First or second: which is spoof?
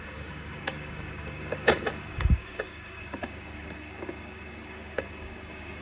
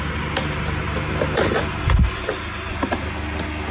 first